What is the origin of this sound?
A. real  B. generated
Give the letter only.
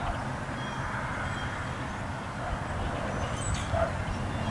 A